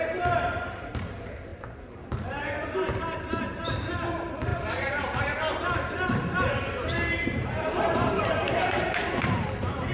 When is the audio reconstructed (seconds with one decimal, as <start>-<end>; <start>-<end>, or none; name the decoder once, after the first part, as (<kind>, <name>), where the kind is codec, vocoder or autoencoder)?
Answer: 0.0-9.9 (vocoder, BigVGAN v2)